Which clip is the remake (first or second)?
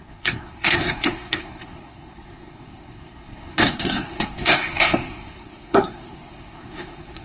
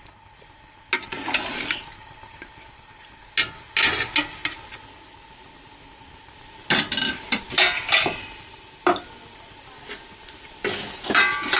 first